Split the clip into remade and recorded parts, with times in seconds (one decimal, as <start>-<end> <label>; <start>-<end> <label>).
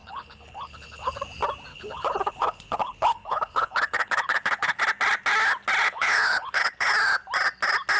0.0-1.2 remade; 1.2-1.7 recorded; 1.7-4.8 remade; 4.8-5.8 recorded; 5.8-6.9 remade; 6.9-8.0 recorded